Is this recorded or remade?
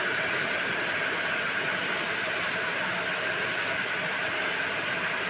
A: recorded